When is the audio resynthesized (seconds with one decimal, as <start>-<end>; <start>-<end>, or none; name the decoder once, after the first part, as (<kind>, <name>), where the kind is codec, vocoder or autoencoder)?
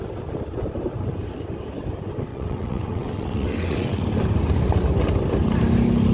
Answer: 2.3-4.0 (vocoder, WaveNeXt)